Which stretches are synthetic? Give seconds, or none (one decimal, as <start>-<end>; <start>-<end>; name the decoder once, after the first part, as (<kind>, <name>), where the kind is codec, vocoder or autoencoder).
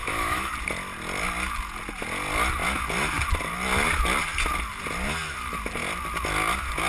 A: 0.0-0.5 (autoencoder, DAC-VAE)